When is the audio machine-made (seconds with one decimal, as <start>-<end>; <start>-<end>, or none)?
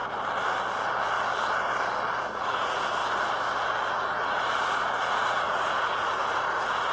2.2-3.0; 3.9-6.9